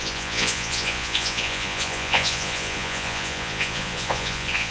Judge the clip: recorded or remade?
remade